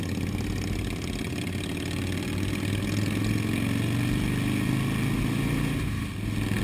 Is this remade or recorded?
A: recorded